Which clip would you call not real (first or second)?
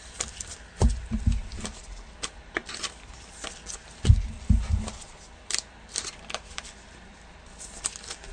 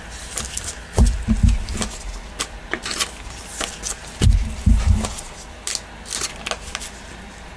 first